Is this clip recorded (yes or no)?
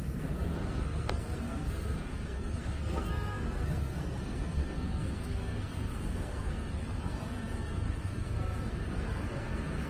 no